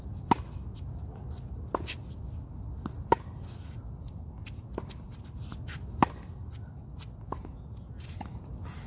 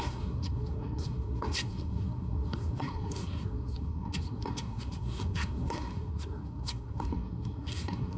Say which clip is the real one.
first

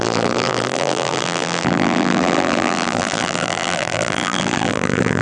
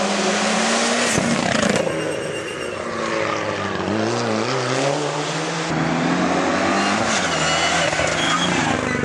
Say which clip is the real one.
second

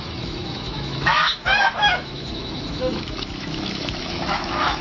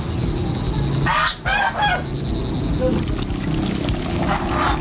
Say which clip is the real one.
second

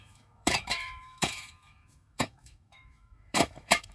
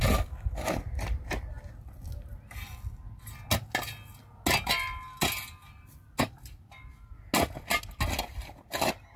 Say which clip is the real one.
second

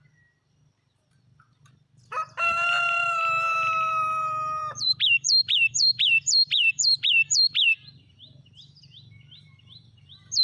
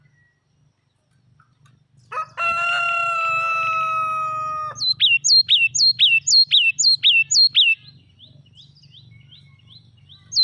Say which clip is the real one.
second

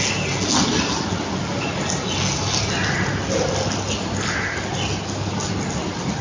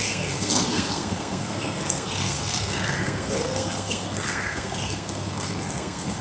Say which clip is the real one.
first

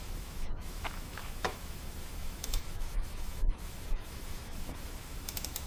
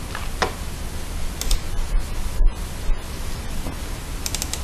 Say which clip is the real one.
second